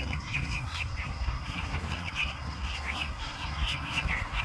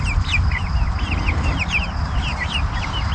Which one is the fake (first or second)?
first